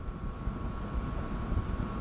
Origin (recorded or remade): recorded